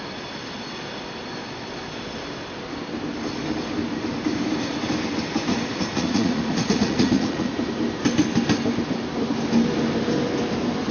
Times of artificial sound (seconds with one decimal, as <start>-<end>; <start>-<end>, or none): 5.5-7.5